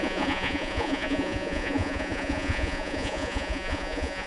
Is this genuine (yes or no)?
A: no